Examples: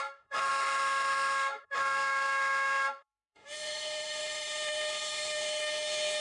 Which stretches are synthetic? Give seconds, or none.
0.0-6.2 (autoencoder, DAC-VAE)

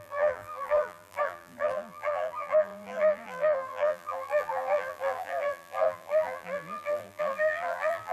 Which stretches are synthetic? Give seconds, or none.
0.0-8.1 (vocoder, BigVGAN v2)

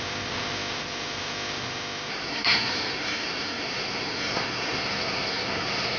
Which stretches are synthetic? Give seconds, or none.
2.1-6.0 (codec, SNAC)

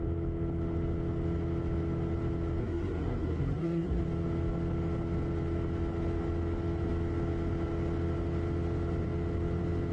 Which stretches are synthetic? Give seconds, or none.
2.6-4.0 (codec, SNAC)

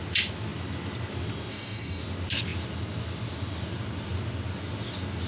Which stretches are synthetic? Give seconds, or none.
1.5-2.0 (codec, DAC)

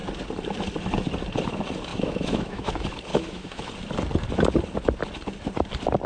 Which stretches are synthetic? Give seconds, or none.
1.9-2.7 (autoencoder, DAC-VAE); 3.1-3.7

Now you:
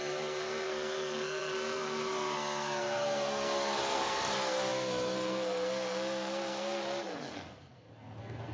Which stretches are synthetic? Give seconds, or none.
0.0-8.5 (codec, SNAC)